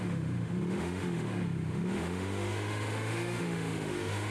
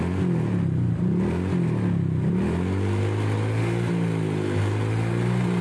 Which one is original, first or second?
second